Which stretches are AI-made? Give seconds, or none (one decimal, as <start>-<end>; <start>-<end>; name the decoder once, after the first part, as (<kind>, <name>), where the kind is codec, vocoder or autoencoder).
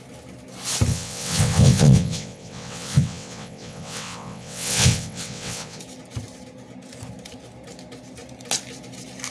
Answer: 0.9-5.8 (vocoder, WaveNeXt)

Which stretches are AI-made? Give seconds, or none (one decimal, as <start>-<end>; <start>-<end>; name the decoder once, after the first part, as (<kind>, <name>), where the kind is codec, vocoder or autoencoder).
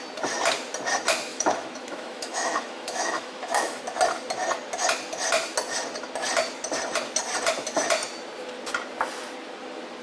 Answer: 1.3-3.8 (autoencoder, DAC-VAE)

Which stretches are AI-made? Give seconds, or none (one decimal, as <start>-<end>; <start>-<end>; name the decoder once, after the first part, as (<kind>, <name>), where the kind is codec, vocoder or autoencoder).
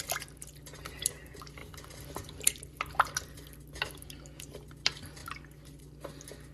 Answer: 1.6-2.6 (vocoder, BigVGAN v2)